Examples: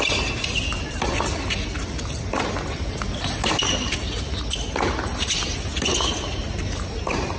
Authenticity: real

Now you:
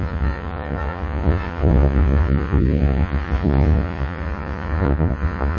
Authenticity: fake